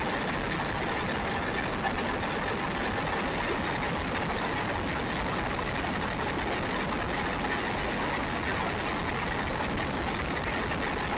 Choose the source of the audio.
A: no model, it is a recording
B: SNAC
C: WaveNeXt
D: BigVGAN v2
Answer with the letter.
A